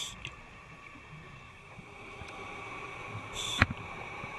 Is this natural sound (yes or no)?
no